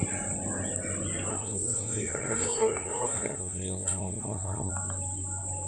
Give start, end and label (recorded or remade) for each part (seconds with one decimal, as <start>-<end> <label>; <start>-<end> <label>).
0.0-1.3 recorded; 1.3-4.7 remade; 4.7-5.7 recorded